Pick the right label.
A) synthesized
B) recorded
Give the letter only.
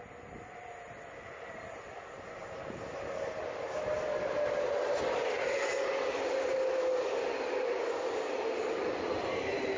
B